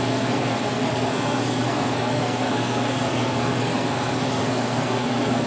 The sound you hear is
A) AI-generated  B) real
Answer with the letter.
A